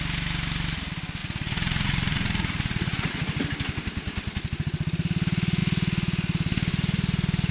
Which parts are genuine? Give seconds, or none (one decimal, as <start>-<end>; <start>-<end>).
0.0-1.2; 3.1-7.5